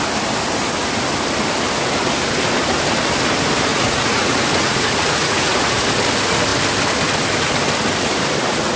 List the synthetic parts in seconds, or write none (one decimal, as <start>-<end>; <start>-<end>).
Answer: 3.7-5.7

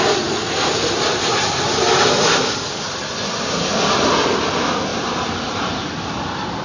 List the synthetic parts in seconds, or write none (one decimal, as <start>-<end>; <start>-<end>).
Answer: 4.9-6.6

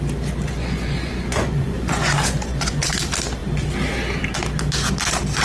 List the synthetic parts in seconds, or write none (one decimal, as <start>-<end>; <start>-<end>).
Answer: 0.6-2.9

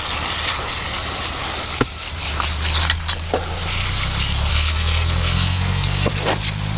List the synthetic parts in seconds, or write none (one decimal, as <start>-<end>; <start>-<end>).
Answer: 4.5-6.1

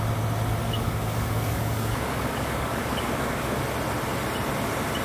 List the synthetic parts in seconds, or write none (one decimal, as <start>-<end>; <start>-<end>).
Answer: 0.6-3.6

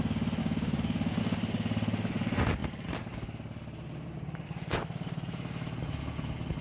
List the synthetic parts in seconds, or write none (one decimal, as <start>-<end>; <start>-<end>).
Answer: 0.4-1.2

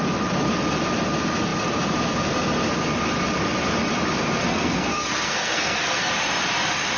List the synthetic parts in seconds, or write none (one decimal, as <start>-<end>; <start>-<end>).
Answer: 4.4-6.1